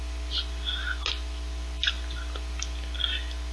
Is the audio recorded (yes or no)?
yes